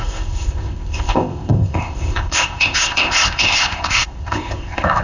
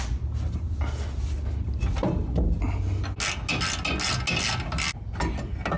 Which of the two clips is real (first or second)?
second